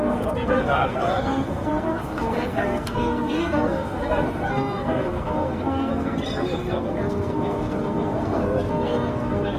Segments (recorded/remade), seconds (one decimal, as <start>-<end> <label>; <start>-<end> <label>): 0.0-9.6 remade